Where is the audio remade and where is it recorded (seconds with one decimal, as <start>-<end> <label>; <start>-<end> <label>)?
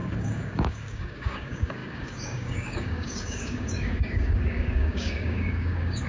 0.0-6.1 remade